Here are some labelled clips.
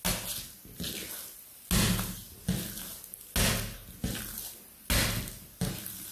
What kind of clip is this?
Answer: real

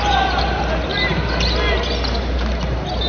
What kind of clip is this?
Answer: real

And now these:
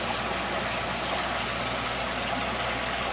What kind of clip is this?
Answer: real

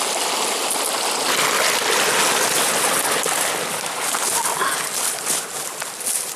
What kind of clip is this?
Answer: real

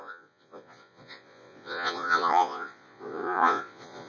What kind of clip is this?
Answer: fake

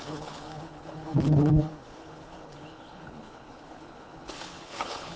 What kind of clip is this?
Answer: fake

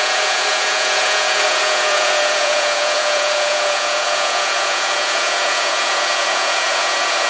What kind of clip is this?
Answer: fake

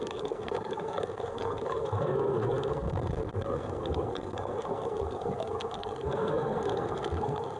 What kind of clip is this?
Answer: fake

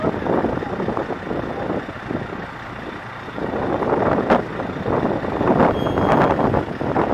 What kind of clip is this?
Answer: real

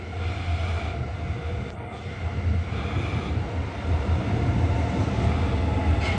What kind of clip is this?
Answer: real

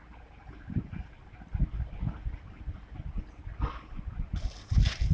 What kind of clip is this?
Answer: real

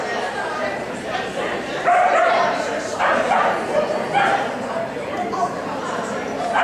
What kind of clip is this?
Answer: fake